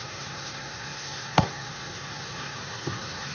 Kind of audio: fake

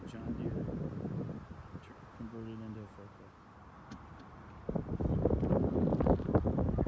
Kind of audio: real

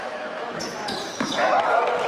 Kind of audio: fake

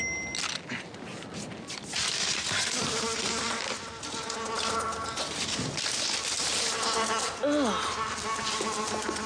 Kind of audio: real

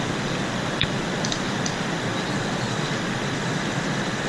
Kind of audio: fake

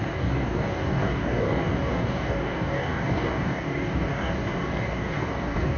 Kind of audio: fake